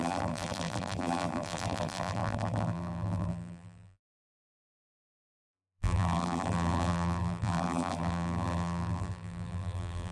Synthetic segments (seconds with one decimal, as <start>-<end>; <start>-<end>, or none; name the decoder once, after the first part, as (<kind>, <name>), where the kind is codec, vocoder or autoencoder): 0.0-10.1 (vocoder, BigVGAN v2)